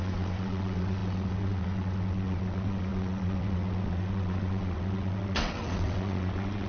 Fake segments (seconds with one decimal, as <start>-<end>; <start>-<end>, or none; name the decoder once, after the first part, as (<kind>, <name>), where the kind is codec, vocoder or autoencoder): 0.0-6.7 (vocoder, WaveNeXt)